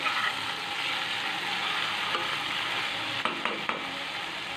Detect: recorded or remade recorded